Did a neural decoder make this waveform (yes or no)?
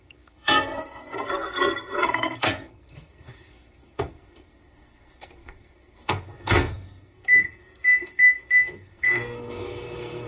yes